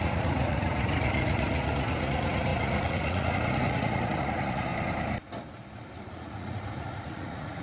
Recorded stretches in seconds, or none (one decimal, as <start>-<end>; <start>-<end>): 4.7-6.0